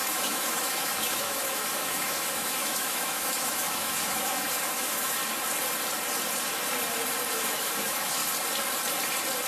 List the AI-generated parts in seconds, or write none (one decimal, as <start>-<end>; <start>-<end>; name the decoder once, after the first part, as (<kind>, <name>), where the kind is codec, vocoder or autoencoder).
0.0-5.2 (autoencoder, DAC-VAE); 7.3-8.2

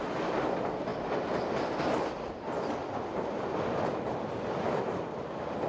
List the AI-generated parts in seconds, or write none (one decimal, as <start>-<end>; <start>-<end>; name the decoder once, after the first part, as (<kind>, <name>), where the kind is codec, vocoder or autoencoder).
0.0-2.8 (vocoder, BigVGAN v2); 4.4-5.7

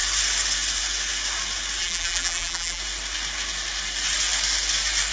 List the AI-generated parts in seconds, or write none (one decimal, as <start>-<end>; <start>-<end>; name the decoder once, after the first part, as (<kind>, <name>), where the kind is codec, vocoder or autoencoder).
1.8-2.8 (vocoder, BigVGAN v2)

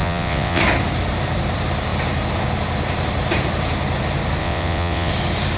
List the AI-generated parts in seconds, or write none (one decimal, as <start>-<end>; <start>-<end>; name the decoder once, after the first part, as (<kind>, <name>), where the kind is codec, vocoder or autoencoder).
0.0-0.6 (vocoder, WaveNeXt); 4.4-5.1

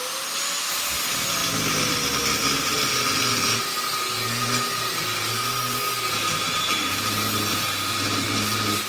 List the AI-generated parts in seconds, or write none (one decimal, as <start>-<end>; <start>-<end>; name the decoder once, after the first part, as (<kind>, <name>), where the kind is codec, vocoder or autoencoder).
none

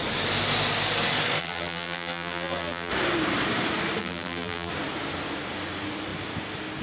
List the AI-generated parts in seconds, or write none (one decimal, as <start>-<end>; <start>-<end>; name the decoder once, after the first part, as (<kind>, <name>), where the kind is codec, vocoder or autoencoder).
1.4-2.9 (vocoder, BigVGAN v2); 4.0-4.7

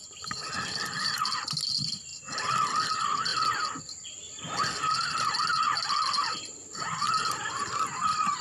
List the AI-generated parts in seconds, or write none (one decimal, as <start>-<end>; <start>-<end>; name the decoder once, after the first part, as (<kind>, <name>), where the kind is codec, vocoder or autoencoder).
none

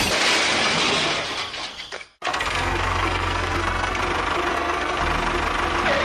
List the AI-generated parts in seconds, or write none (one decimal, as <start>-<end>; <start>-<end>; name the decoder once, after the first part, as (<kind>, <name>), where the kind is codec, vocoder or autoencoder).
1.7-4.0 (codec, SNAC); 4.5-5.0